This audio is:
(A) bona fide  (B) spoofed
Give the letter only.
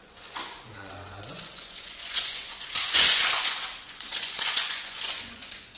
B